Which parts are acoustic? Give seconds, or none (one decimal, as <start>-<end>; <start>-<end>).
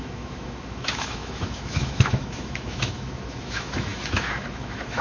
none